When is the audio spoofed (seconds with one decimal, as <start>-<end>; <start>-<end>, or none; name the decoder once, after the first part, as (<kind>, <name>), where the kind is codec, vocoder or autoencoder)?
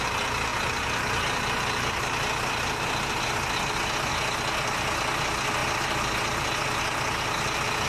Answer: none